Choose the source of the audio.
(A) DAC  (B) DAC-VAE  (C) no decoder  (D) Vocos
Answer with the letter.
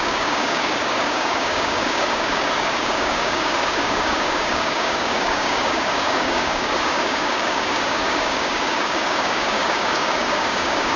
A